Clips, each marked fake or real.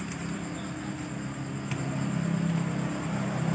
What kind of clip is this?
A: real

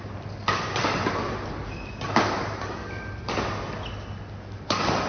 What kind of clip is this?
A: real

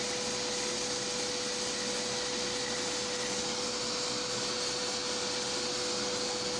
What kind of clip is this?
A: real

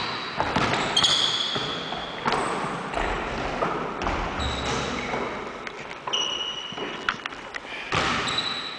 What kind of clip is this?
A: real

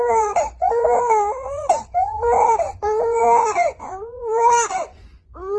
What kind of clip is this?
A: fake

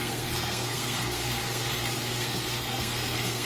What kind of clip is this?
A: fake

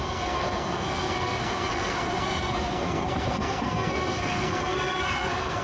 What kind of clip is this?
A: fake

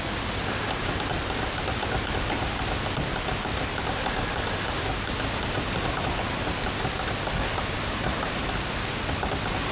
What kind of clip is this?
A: real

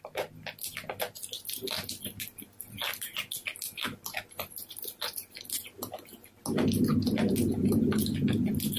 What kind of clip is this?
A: real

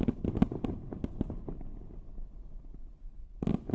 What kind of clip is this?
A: real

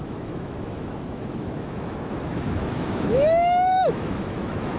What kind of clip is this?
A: fake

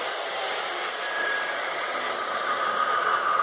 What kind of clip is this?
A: fake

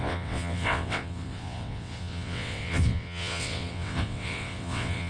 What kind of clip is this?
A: fake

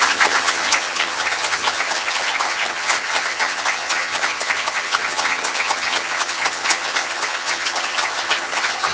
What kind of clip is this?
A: fake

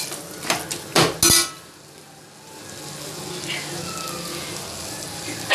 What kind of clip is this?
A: real